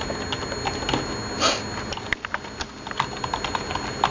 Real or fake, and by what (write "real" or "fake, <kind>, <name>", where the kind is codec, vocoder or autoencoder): real